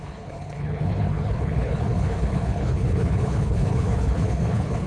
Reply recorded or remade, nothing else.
remade